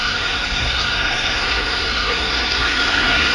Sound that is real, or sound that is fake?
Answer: fake